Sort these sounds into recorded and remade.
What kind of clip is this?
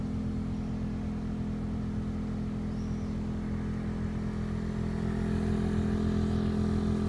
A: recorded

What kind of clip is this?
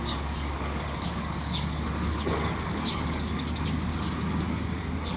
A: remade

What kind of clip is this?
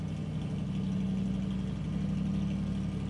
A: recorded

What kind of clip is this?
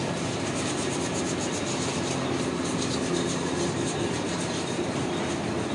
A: recorded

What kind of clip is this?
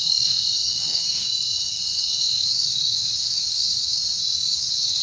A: remade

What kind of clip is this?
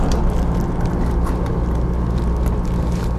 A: recorded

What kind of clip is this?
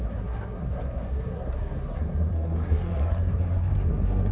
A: remade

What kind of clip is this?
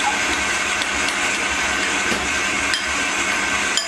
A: recorded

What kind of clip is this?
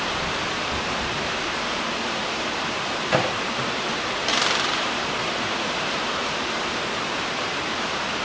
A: remade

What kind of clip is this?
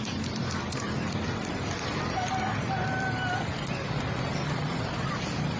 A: remade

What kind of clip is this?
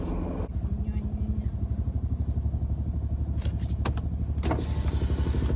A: recorded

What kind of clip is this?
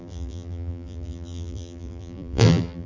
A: remade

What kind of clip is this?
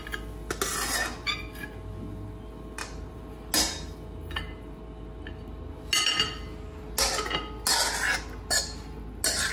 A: recorded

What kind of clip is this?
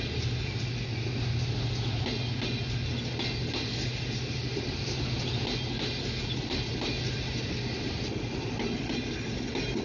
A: recorded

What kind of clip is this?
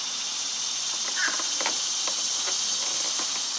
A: recorded